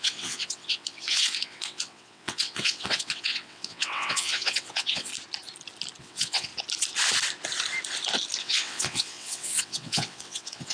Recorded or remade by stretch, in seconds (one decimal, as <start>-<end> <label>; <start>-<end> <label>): 0.0-5.1 remade; 5.1-6.0 recorded; 6.0-6.5 remade; 6.5-8.4 recorded; 8.4-10.7 remade

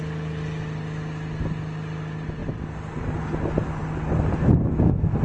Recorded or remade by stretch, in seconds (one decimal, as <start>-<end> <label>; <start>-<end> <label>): 0.0-5.2 recorded

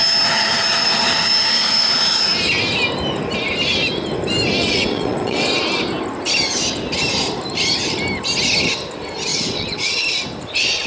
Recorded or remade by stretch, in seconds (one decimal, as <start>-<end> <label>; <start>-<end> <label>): 0.0-4.6 recorded; 4.6-5.5 remade; 5.5-9.3 recorded; 9.3-10.0 remade; 10.0-10.9 recorded

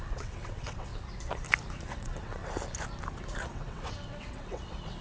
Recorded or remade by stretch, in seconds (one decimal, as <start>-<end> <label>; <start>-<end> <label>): 0.0-0.9 remade; 0.9-1.9 recorded; 1.9-2.4 remade; 2.4-3.5 recorded; 3.5-5.0 remade